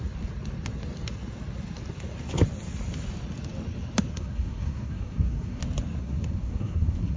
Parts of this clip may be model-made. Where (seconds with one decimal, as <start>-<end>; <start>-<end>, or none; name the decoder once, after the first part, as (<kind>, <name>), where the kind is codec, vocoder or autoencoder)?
4.1-5.6 (codec, SNAC); 6.0-7.2

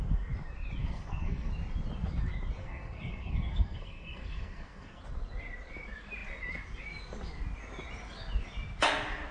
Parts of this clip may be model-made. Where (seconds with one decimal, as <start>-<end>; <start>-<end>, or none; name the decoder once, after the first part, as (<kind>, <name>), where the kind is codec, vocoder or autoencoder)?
0.8-1.5 (codec, SNAC); 2.6-5.0

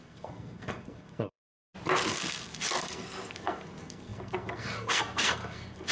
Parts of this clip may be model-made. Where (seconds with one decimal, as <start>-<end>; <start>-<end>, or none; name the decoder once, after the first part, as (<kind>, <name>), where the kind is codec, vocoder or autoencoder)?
0.0-1.4 (codec, SNAC); 2.1-5.9

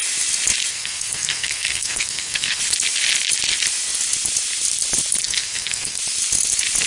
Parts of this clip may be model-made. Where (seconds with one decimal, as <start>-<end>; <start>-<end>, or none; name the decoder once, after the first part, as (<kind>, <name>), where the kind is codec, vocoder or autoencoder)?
0.7-2.6 (codec, SNAC); 5.2-6.0

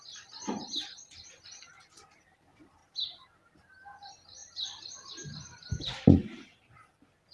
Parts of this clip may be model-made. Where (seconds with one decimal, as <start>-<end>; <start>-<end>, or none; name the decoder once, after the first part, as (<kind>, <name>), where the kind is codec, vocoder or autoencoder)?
none

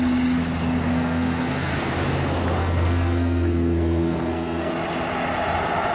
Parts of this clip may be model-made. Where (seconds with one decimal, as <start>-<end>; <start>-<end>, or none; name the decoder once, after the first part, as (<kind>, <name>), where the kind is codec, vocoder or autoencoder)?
0.9-1.9 (codec, SNAC); 2.6-4.7

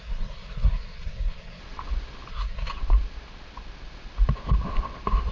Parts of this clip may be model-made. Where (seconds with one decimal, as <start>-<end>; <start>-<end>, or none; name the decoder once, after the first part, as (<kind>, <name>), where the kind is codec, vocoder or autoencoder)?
0.0-1.6 (codec, SNAC); 2.3-2.7

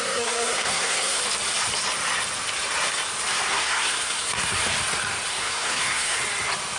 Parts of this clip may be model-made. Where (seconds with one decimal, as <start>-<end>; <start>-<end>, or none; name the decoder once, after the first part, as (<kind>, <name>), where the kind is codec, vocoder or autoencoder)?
0.0-1.2 (codec, SNAC); 3.5-4.6; 5.3-6.2